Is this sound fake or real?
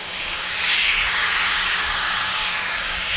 fake